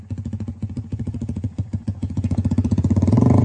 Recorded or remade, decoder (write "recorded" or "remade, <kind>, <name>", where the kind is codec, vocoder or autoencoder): remade, vocoder, Vocos